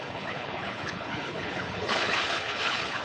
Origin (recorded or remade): remade